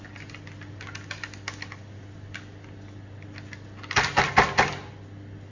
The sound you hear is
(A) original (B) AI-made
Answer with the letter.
A